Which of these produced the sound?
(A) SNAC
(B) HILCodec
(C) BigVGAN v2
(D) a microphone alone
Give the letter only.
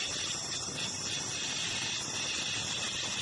D